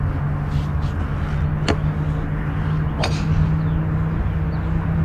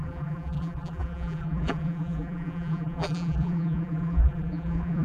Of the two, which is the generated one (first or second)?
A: second